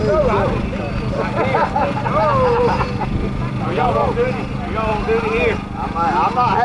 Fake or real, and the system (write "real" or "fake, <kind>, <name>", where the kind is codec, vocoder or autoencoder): real